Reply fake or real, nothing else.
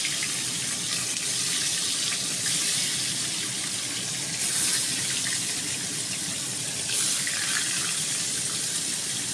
real